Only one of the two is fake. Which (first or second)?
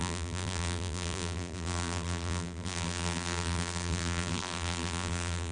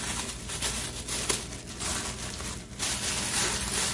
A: first